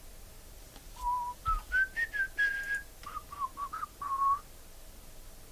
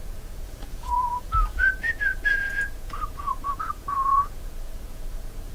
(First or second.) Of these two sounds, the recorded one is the first